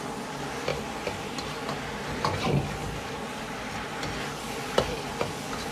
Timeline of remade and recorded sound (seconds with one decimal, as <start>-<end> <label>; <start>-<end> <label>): 0.0-5.7 recorded